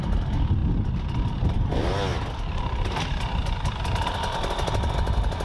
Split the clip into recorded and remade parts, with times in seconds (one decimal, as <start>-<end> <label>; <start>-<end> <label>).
0.0-5.4 recorded